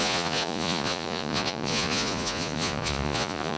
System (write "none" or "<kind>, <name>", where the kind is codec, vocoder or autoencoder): vocoder, Vocos